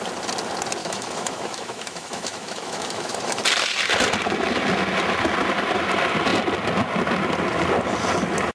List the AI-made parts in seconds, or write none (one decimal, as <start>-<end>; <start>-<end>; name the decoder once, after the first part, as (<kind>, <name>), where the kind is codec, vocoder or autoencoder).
0.8-3.4 (autoencoder, DAC-VAE)